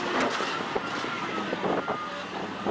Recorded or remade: recorded